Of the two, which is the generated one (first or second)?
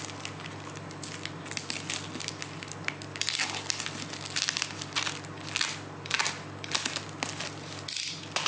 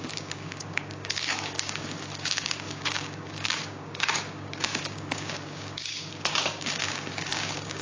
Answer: second